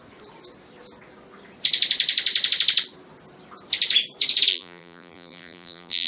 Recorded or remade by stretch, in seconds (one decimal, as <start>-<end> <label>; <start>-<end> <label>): 0.0-4.5 recorded; 4.5-6.1 remade